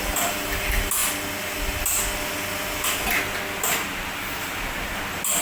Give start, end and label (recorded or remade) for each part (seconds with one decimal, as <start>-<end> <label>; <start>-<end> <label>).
0.0-5.4 recorded

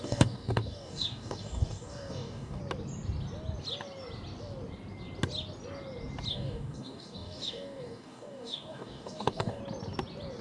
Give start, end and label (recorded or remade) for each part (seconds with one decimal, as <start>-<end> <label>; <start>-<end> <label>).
0.0-2.6 remade; 2.6-6.3 recorded; 6.3-9.6 remade; 9.6-10.4 recorded

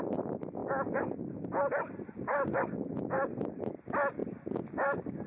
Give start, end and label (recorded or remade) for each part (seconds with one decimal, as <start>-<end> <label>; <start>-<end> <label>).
0.0-5.3 recorded

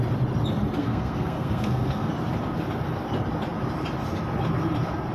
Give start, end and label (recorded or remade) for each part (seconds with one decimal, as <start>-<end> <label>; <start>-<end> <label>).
0.0-0.8 recorded; 0.8-2.1 remade; 2.1-5.1 recorded

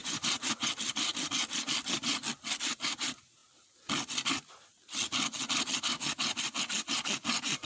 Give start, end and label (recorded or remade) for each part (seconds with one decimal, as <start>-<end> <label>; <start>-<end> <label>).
0.0-0.7 remade; 0.7-7.7 recorded

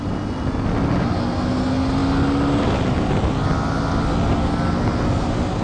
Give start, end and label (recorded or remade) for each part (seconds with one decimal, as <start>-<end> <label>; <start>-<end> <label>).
0.0-5.6 recorded